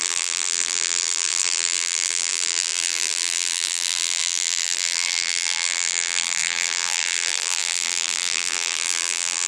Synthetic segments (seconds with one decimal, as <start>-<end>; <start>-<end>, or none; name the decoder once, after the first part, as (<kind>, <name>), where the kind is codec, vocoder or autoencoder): 0.0-9.5 (vocoder, BigVGAN v2)